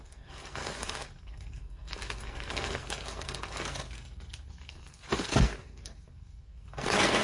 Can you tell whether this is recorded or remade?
remade